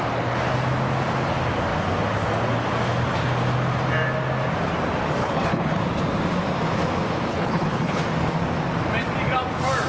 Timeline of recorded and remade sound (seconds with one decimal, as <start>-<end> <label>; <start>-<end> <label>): 0.0-5.2 recorded; 5.2-5.8 remade; 5.8-7.3 recorded; 7.3-8.0 remade; 8.0-9.9 recorded